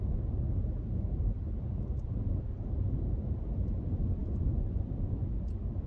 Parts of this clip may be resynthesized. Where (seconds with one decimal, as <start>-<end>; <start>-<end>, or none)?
none

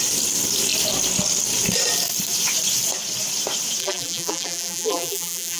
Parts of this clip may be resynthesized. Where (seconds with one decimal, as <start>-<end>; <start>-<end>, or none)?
3.8-5.6

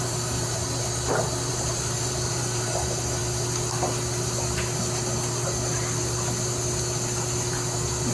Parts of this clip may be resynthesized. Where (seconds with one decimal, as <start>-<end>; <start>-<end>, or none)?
0.0-0.6; 1.5-3.2

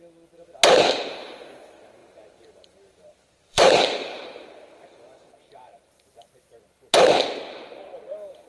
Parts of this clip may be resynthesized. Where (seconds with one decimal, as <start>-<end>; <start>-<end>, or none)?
2.0-6.3

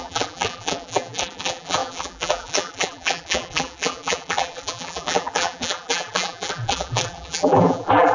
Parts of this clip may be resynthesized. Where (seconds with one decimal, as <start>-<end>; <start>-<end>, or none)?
0.0-8.1

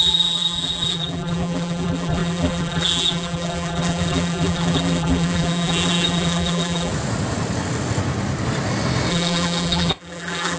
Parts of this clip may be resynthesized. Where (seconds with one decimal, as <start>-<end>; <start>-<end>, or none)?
0.0-6.9; 9.1-10.6

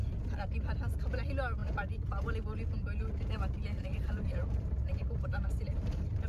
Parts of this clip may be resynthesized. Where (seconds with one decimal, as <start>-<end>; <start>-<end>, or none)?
3.9-6.3